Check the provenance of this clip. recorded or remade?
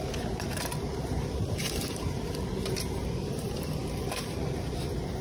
remade